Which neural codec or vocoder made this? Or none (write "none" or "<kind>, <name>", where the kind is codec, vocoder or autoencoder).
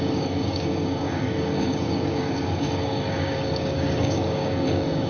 codec, DAC